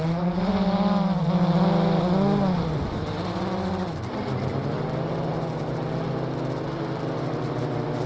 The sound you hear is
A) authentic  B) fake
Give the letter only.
A